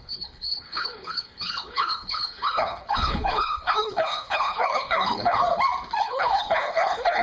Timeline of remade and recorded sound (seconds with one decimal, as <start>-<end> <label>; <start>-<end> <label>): 0.0-5.4 remade; 5.4-6.0 recorded; 6.0-7.2 remade